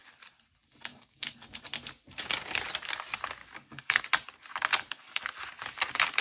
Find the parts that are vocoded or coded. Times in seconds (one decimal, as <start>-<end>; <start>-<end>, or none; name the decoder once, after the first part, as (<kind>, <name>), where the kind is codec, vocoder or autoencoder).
0.9-1.6 (codec, DAC); 3.4-4.0; 4.7-5.2